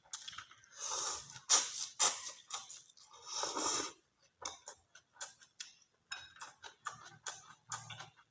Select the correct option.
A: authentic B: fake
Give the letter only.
A